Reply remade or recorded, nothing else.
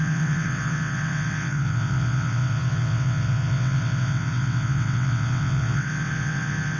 remade